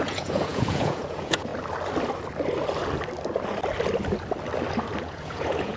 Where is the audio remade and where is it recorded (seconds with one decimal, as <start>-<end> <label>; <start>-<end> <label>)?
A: 0.0-1.5 remade; 1.5-5.0 recorded; 5.0-5.8 remade